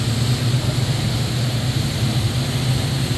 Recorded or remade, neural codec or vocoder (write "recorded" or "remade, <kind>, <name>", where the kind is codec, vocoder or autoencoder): recorded